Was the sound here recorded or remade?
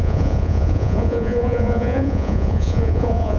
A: remade